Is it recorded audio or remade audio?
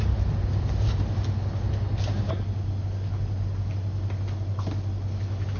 recorded